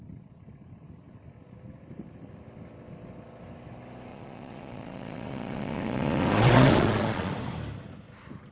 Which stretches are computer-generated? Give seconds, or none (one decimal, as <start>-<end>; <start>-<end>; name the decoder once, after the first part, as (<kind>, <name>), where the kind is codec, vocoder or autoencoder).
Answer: 4.1-7.3 (vocoder, Vocos)